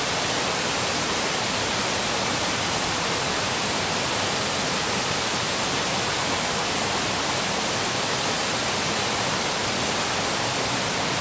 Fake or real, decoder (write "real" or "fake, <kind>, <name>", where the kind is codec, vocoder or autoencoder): real